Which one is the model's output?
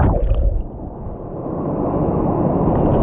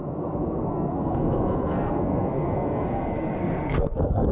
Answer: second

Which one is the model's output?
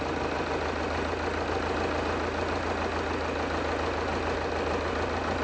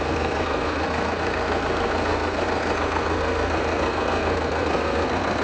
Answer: second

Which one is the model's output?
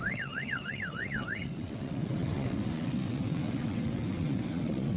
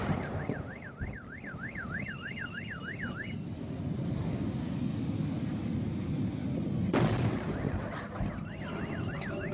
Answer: first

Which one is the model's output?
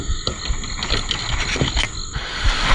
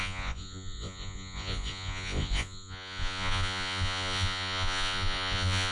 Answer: second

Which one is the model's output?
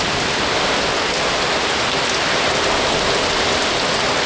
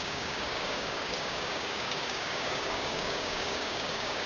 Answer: second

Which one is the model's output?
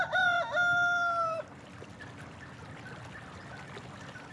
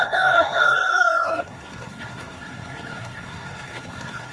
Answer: second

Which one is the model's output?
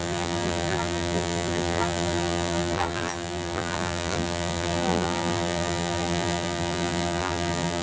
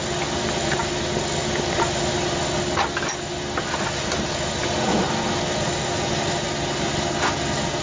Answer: first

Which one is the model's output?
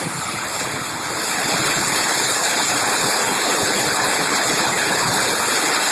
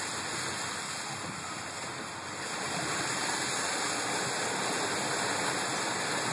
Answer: first